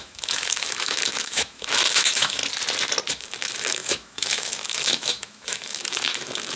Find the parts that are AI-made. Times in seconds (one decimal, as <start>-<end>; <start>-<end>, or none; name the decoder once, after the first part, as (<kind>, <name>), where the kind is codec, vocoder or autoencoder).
0.0-2.4 (autoencoder, DAC-VAE); 3.1-6.6